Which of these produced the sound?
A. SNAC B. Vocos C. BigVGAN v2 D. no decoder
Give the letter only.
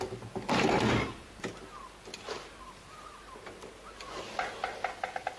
D